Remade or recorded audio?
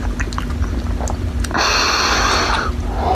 recorded